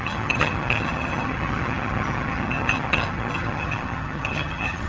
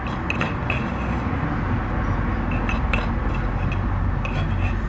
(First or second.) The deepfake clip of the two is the first